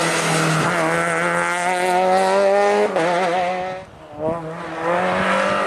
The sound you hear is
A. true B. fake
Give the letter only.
A